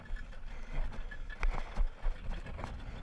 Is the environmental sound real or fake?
real